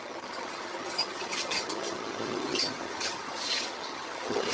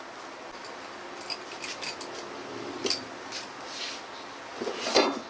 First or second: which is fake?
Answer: first